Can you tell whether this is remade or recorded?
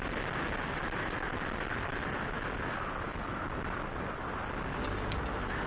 recorded